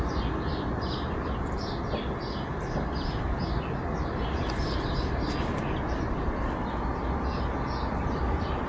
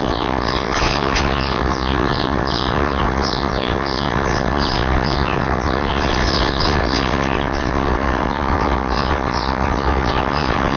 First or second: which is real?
first